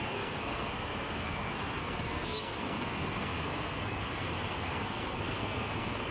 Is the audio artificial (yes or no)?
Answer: yes